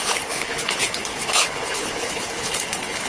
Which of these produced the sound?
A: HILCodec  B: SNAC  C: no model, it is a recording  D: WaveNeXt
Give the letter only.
A